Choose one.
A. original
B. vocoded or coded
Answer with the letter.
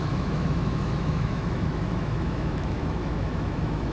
B